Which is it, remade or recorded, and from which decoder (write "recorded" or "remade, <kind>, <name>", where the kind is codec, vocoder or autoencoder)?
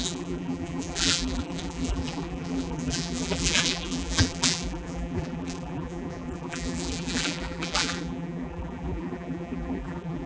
remade, vocoder, BigVGAN v2